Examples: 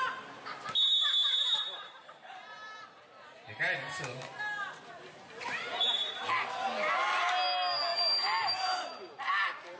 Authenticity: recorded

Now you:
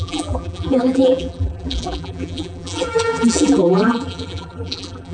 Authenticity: remade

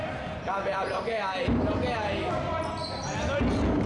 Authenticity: recorded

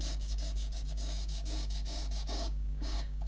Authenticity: remade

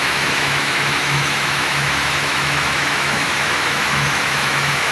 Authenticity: remade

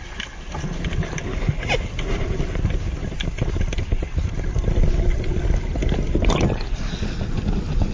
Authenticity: recorded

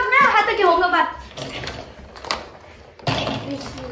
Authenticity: recorded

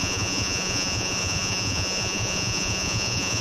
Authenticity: remade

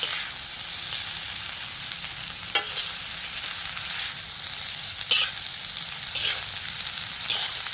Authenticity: recorded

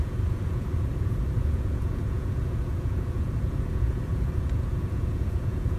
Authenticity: remade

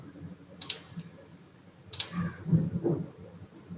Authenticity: recorded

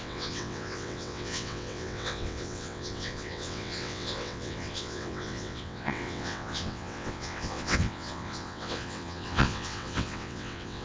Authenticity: remade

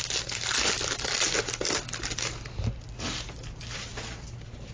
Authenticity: recorded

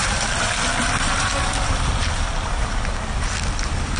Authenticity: recorded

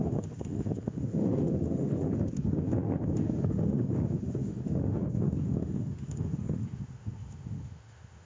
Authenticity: remade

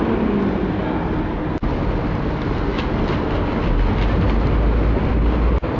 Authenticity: recorded